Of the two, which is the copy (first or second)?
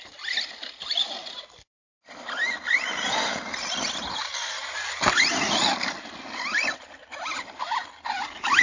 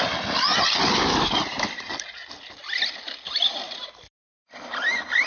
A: first